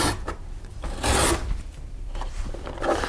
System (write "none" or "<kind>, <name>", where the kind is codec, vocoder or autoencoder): vocoder, BigVGAN v2